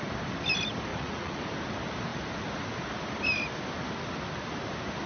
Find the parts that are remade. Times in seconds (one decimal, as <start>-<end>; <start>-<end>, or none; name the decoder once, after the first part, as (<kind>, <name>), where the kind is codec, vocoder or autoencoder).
0.9-1.4 (vocoder, Vocos)

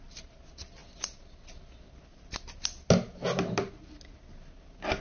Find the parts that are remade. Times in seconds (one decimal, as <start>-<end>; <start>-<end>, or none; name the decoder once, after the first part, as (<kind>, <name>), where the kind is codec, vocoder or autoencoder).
none

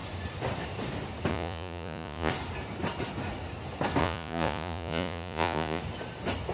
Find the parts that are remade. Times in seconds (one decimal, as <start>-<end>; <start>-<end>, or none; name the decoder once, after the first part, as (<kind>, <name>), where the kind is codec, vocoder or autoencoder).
1.3-2.3 (vocoder, Vocos); 4.0-5.8